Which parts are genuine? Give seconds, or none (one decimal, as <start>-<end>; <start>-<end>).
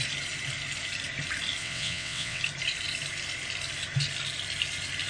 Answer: 0.0-1.6; 2.4-5.1